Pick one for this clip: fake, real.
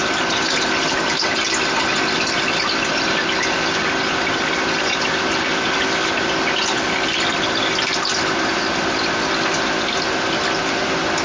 real